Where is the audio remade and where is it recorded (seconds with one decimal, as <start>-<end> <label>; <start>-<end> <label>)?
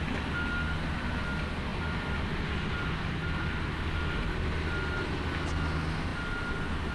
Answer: 0.0-6.9 recorded